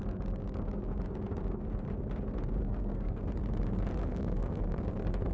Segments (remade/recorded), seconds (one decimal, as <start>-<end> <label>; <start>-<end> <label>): 0.0-2.6 recorded; 2.6-3.2 remade; 3.2-4.0 recorded; 4.0-4.8 remade; 4.8-5.3 recorded